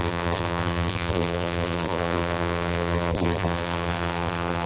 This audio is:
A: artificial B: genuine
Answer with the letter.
A